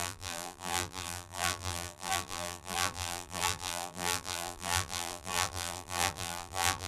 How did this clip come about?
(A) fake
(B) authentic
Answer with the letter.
A